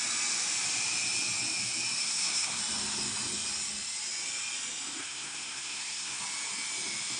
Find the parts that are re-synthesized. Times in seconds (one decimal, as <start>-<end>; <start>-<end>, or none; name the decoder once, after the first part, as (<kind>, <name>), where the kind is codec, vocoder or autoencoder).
2.0-2.6 (codec, SNAC); 5.0-6.2